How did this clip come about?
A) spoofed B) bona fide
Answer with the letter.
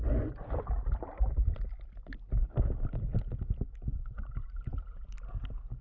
B